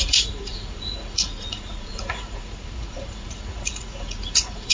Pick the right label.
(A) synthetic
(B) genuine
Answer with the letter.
A